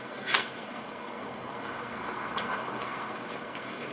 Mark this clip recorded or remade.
remade